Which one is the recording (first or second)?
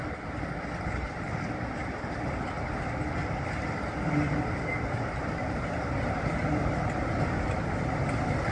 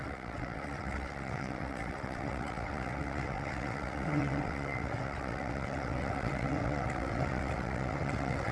first